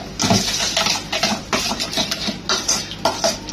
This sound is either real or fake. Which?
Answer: real